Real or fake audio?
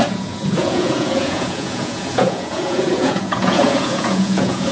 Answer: fake